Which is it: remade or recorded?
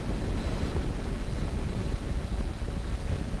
recorded